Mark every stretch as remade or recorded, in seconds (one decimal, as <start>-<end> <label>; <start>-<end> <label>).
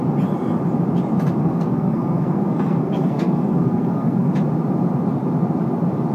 0.0-1.4 recorded; 1.4-4.3 remade; 4.3-6.1 recorded